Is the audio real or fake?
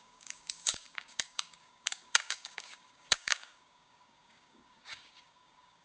fake